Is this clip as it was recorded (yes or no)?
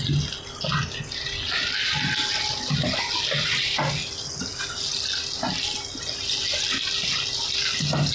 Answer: yes